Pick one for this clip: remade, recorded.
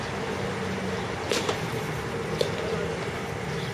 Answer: recorded